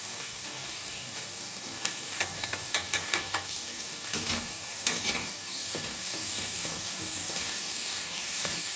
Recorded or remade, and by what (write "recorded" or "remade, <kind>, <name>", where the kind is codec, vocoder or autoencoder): remade, codec, DAC